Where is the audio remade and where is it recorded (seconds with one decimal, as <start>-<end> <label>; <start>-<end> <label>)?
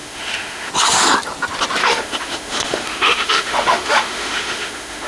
0.0-0.7 remade; 0.7-1.8 recorded; 1.8-5.1 remade